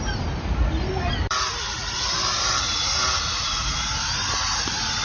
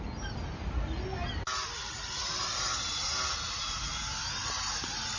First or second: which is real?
second